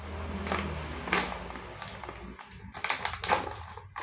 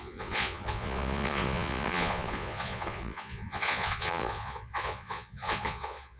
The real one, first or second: first